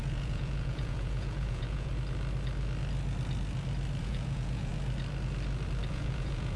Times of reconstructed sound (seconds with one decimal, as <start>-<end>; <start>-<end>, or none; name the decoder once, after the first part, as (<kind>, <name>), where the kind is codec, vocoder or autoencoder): 0.0-1.9 (vocoder, Vocos); 4.0-4.7; 5.9-6.6

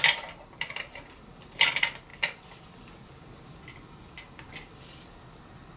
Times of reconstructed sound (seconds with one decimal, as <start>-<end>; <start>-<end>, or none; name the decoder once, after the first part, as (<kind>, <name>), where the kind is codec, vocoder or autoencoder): none

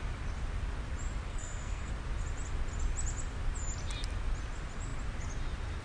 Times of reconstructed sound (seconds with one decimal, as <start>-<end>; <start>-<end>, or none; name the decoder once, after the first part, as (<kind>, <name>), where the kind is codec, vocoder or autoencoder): 1.3-1.9 (codec, SNAC)

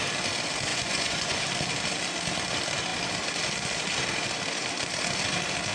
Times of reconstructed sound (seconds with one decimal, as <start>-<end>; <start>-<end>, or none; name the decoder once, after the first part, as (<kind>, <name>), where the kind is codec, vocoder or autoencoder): 0.7-1.4 (vocoder, Vocos)

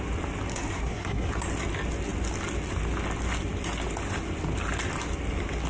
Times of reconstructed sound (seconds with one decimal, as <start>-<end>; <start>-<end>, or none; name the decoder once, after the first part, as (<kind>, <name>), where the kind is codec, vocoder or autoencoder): 0.5-1.3 (codec, SNAC)

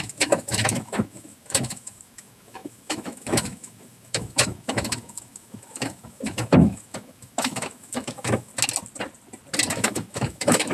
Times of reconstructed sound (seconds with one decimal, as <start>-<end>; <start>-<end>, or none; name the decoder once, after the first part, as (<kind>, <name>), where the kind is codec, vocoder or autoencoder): 0.0-8.5 (autoencoder, DAC-VAE); 9.7-10.7

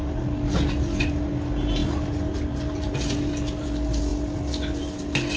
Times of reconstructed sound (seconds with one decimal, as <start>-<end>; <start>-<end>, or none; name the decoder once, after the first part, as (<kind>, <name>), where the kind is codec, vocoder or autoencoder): none